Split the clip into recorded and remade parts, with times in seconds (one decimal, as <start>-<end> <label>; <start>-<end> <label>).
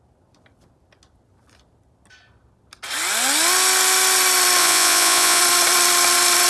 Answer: 0.0-4.6 recorded; 4.6-5.4 remade; 5.4-6.5 recorded